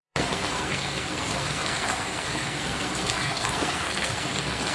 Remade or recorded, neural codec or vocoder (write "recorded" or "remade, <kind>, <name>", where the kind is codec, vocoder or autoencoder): remade, codec, SNAC